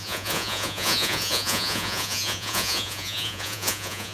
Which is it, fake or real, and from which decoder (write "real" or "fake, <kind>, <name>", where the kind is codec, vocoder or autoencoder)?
fake, vocoder, Vocos